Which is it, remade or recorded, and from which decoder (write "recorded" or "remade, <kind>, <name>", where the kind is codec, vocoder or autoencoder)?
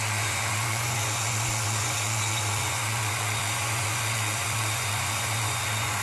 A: remade, vocoder, Vocos